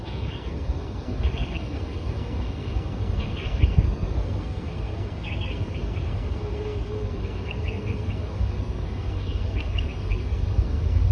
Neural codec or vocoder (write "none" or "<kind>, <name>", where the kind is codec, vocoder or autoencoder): codec, SNAC